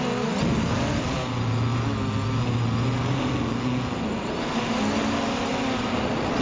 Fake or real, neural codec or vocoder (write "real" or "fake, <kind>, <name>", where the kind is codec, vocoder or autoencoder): real